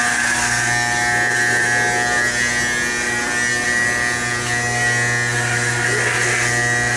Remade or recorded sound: recorded